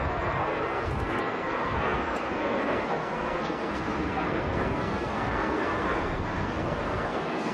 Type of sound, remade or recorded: remade